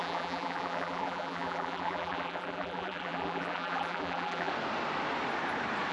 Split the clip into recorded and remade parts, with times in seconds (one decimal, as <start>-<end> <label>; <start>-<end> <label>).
0.0-4.5 remade; 4.5-5.9 recorded